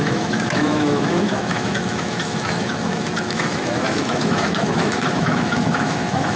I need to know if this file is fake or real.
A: fake